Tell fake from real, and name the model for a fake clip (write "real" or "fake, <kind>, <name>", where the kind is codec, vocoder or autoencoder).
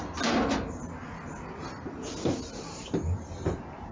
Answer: real